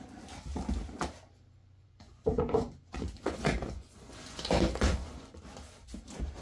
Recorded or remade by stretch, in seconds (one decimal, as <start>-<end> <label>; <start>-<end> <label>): 0.0-1.6 recorded; 1.6-5.4 remade; 5.4-6.4 recorded